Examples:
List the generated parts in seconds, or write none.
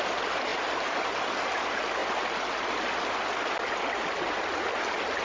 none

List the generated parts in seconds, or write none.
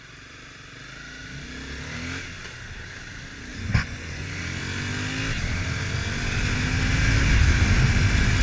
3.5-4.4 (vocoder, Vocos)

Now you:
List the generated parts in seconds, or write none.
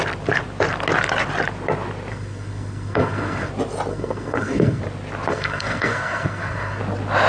2.1-3.5 (codec, SNAC); 3.9-4.8; 5.3-6.8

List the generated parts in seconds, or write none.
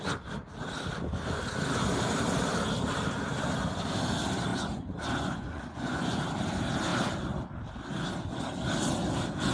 4.5-6.2 (vocoder, Vocos)